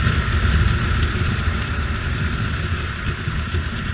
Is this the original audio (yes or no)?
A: yes